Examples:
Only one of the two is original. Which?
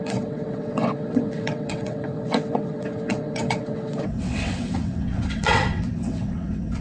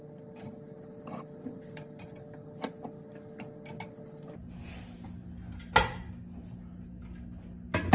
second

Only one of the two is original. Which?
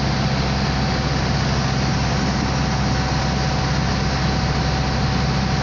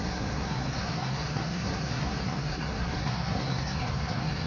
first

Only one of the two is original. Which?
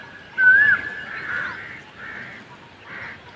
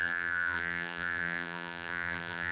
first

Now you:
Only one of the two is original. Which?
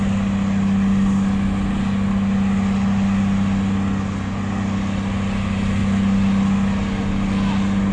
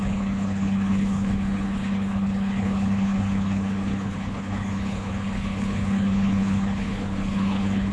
first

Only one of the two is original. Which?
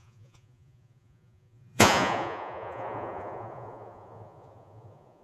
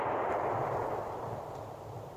second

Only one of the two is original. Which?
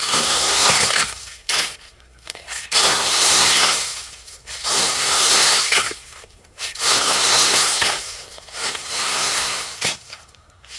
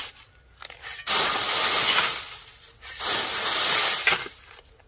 second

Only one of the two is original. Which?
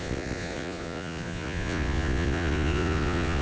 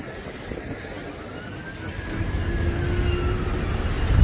second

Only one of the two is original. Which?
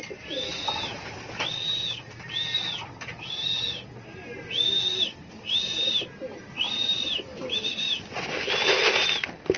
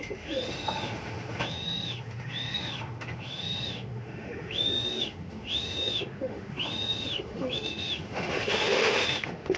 first